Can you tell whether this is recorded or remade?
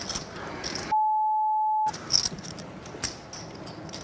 recorded